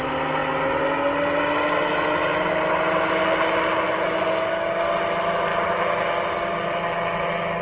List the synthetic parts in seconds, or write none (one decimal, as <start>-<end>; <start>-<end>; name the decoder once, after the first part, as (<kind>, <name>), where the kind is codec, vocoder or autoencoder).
none